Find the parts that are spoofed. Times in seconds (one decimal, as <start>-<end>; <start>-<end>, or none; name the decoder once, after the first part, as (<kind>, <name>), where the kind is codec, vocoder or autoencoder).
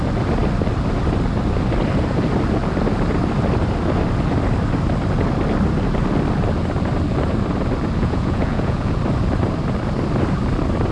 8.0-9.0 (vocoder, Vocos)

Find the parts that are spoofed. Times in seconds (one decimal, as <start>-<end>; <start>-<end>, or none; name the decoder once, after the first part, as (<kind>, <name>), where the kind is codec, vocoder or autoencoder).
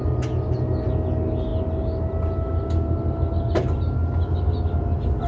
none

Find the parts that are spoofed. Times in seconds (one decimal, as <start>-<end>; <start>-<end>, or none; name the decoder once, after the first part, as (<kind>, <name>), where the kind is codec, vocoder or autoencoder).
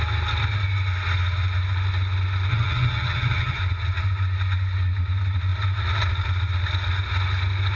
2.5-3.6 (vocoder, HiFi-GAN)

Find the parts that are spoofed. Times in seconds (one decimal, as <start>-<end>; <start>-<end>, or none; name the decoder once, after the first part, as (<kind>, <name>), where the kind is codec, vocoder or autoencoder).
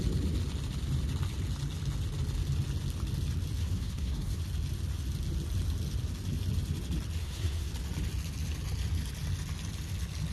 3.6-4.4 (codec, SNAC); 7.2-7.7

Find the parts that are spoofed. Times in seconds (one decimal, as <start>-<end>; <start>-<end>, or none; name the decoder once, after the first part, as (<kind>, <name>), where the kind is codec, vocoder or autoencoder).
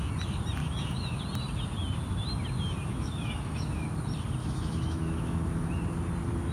0.6-1.2 (autoencoder, DAC-VAE); 2.9-3.9; 4.4-5.7